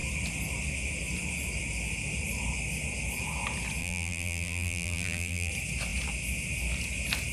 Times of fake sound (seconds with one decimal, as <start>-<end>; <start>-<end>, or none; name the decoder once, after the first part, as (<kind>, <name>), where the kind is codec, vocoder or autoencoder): 3.8-5.5 (vocoder, BigVGAN v2)